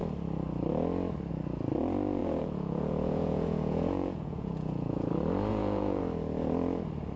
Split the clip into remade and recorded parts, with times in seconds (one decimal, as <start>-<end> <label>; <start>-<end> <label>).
0.0-2.2 recorded; 2.2-5.1 remade; 5.1-5.5 recorded; 5.5-6.0 remade; 6.0-7.2 recorded

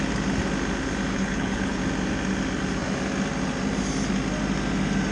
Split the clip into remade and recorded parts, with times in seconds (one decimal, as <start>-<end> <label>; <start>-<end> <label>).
0.0-1.1 recorded; 1.1-1.8 remade; 1.8-5.1 recorded

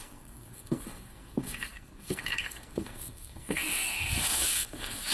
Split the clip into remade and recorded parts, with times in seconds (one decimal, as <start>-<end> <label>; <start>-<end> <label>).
0.0-5.1 remade